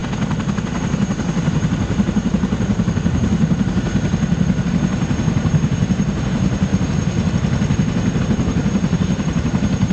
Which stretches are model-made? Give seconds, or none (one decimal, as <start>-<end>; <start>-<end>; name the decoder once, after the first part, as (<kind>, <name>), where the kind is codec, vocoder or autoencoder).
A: 0.7-3.9 (vocoder, BigVGAN v2); 4.7-6.7; 8.2-9.9